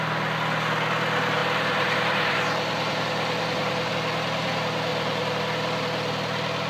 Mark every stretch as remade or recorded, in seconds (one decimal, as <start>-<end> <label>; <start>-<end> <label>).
0.0-1.4 recorded; 1.4-3.9 remade; 3.9-4.9 recorded; 4.9-5.4 remade; 5.4-6.7 recorded